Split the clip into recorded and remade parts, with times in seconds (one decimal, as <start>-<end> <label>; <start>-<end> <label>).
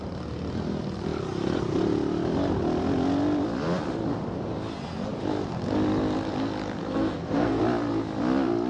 0.0-6.8 recorded; 6.8-7.6 remade; 7.6-8.7 recorded